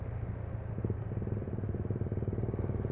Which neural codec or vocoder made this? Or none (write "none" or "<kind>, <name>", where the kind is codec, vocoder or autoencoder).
none